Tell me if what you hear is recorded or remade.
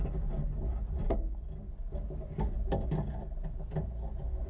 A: recorded